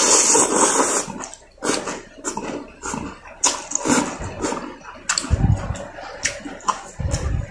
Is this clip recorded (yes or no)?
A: yes